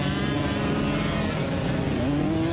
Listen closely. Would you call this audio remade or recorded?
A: recorded